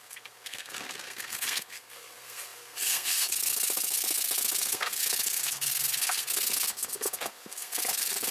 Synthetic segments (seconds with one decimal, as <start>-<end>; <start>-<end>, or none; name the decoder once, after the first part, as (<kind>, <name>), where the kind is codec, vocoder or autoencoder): 0.0-8.3 (codec, SNAC)